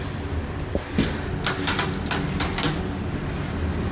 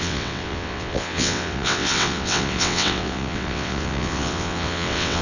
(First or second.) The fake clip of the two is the second